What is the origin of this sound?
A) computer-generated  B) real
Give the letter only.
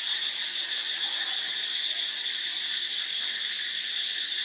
A